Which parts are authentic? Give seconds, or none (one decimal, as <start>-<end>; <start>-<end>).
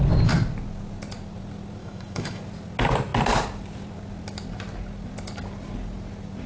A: 0.0-1.8; 2.4-6.5